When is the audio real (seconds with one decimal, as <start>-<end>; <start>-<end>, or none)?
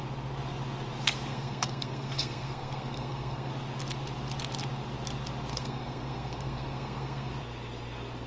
0.0-1.3; 3.5-5.5; 7.3-8.3